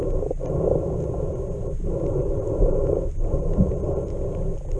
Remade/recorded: recorded